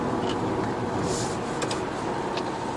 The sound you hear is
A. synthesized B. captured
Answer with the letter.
B